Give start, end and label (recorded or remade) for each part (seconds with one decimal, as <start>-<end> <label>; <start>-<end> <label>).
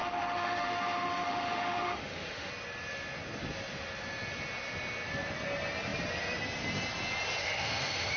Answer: 0.0-2.5 remade; 2.5-7.4 recorded; 7.4-8.2 remade